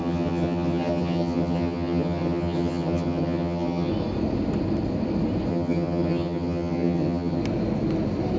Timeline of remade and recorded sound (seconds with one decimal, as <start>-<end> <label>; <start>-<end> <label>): 0.0-3.9 remade; 3.9-5.5 recorded; 5.5-7.4 remade; 7.4-8.4 recorded